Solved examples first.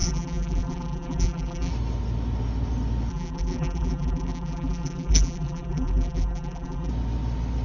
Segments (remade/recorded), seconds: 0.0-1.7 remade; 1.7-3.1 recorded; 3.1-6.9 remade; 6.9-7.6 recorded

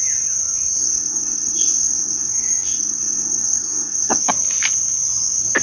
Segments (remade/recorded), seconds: 0.0-0.8 recorded; 0.8-4.2 remade; 4.2-5.6 recorded

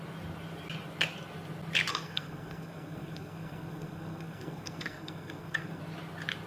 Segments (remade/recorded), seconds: 0.0-1.9 recorded; 1.9-5.8 remade; 5.8-6.5 recorded